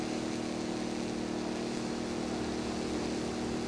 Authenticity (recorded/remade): recorded